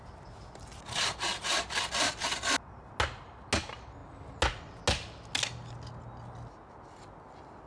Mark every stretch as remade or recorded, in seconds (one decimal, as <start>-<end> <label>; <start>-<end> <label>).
0.0-7.7 recorded